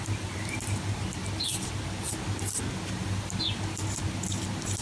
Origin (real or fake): real